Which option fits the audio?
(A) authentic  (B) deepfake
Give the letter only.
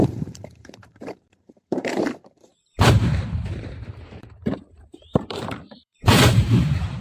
B